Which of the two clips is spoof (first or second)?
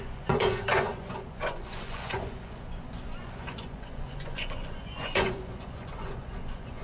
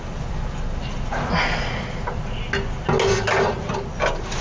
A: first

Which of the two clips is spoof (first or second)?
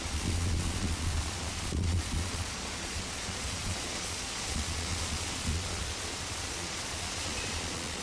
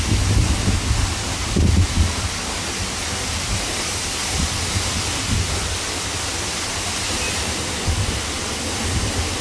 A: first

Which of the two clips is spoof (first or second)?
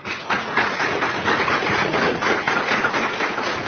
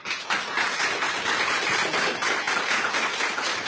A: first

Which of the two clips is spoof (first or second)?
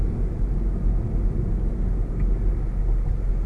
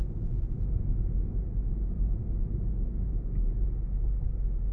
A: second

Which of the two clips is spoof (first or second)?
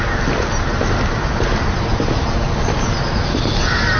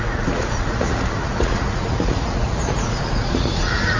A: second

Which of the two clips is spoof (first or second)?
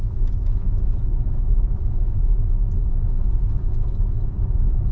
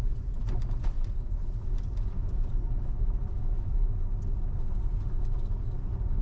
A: first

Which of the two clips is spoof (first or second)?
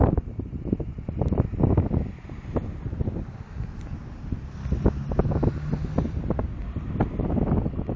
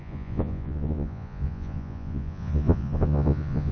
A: second